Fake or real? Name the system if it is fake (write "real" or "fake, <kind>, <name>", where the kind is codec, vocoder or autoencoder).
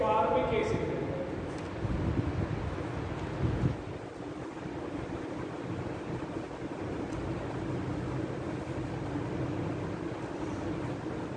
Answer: real